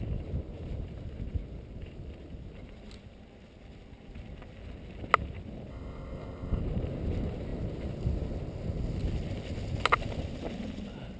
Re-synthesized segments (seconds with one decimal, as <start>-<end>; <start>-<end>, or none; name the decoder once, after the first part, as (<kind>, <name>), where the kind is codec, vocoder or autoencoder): 5.7-6.6 (codec, ZipCodec)